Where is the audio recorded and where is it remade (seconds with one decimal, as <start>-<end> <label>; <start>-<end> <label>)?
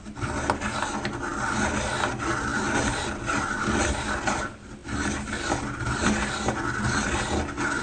0.0-2.5 recorded; 2.5-3.8 remade; 3.8-4.8 recorded; 4.8-6.2 remade; 6.2-7.8 recorded